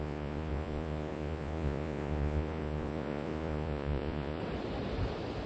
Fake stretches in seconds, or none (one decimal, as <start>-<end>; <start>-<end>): 0.0-4.4